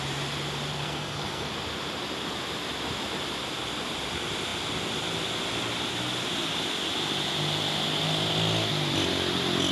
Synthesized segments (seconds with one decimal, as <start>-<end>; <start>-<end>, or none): 0.7-1.5